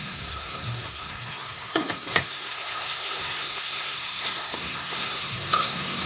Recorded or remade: remade